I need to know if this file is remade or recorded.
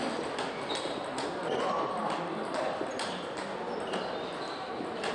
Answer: recorded